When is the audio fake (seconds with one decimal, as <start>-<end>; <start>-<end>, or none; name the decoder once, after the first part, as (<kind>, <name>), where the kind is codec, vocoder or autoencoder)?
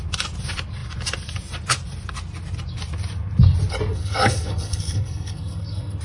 3.9-6.0 (codec, SNAC)